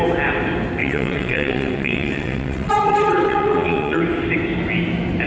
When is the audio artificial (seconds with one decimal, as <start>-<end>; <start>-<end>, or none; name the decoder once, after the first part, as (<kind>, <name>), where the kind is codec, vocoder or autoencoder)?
0.8-4.0 (vocoder, WaveNeXt)